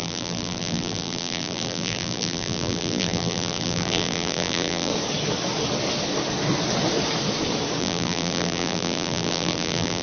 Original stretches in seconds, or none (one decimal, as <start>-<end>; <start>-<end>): 4.9-7.8